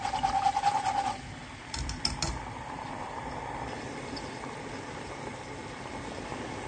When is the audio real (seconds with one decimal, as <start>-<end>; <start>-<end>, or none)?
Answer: 0.0-1.4; 4.4-6.7